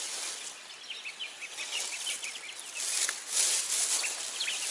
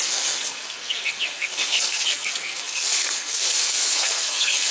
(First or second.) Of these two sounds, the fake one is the second